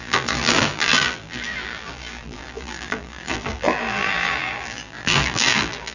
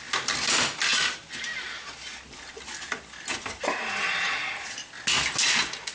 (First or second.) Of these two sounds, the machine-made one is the first